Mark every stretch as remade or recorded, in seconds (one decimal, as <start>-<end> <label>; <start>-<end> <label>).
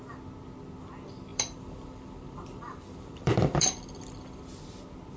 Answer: 0.0-1.3 recorded; 1.3-4.4 remade; 4.4-5.2 recorded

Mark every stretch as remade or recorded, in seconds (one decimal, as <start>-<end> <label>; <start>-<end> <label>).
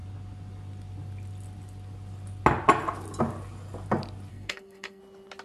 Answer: 0.0-4.3 recorded; 4.3-5.0 remade; 5.0-5.4 recorded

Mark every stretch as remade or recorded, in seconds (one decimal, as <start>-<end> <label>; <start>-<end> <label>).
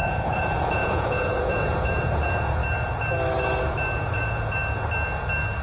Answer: 0.0-2.6 remade; 2.6-4.1 recorded; 4.1-4.6 remade; 4.6-5.6 recorded